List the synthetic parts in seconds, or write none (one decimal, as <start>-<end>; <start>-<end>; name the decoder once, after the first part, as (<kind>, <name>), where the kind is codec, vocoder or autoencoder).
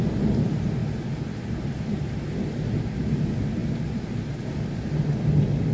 0.8-2.1 (vocoder, BigVGAN v2); 3.6-4.1